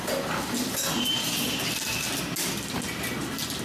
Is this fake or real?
real